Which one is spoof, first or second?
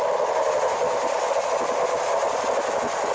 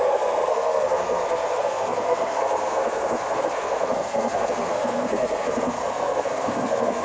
second